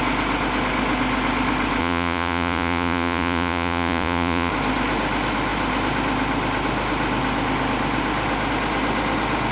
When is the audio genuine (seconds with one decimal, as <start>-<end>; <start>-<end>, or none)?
0.0-1.8; 4.5-9.5